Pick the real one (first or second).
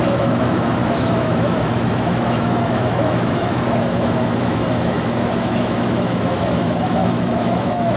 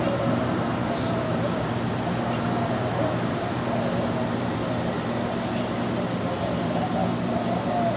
second